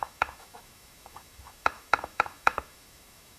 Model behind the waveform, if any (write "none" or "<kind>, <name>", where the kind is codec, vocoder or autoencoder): autoencoder, DAC-VAE